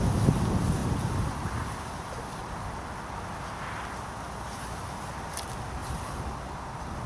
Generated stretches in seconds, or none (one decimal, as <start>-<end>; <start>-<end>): none